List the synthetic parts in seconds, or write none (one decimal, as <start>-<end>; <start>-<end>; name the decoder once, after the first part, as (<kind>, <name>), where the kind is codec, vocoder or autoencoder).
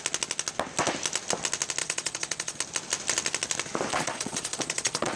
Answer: 1.8-2.6 (vocoder, Vocos); 3.9-5.2